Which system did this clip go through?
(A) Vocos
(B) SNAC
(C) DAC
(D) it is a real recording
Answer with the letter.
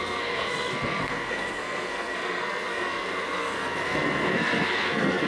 B